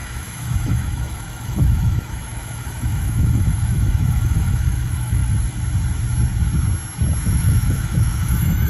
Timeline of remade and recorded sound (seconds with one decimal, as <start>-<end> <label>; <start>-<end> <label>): 0.0-5.2 remade; 5.2-7.2 recorded; 7.2-8.7 remade